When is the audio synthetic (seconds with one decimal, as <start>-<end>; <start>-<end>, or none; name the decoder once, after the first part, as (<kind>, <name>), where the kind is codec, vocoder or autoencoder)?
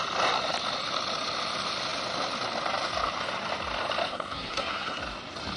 4.1-5.0 (codec, SNAC)